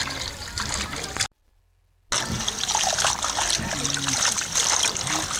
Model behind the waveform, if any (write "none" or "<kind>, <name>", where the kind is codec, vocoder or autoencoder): none